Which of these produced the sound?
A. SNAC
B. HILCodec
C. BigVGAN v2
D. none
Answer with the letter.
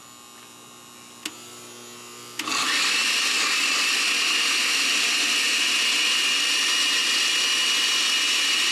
D